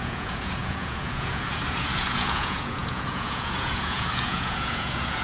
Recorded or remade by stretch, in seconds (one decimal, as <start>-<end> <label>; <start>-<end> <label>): 0.0-5.2 remade